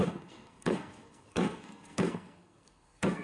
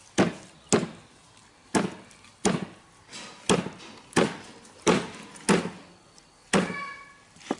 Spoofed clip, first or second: first